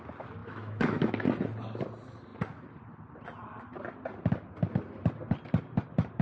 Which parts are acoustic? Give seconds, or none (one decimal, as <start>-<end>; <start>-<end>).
0.0-0.4; 1.1-6.2